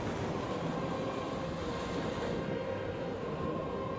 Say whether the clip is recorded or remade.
recorded